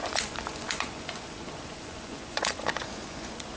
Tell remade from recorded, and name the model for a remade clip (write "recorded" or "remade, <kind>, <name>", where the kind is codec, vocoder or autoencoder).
remade, vocoder, Vocos